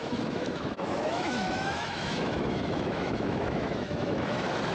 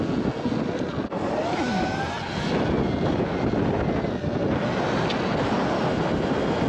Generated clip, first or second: first